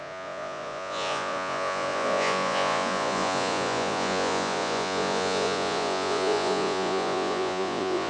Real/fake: fake